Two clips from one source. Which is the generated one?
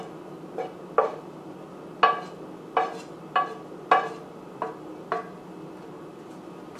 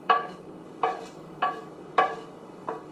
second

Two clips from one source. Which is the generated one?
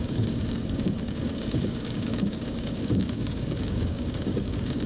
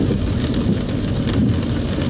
first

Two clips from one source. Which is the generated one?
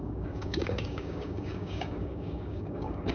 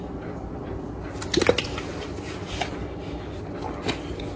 first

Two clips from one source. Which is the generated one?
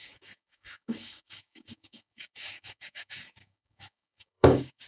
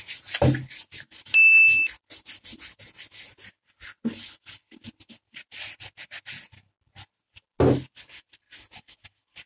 first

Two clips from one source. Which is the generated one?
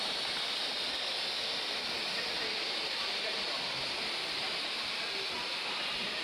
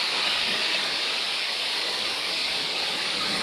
second